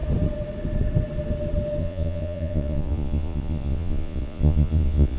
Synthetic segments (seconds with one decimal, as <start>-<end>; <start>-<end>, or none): 1.8-5.2